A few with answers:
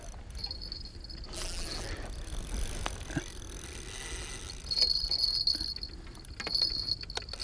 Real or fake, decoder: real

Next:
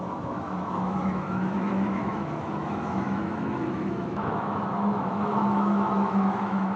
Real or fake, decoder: fake, autoencoder, DAC-VAE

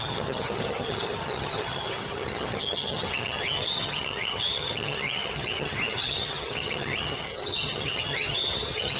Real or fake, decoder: fake, vocoder, HiFi-GAN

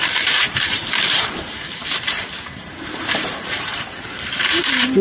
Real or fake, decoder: fake, vocoder, BigVGAN v2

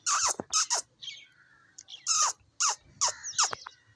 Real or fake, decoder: real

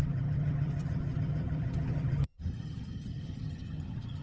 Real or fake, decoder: fake, vocoder, HiFi-GAN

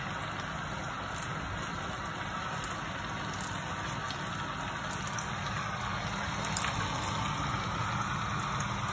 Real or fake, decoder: real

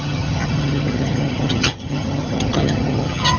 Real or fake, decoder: fake, vocoder, HiFi-GAN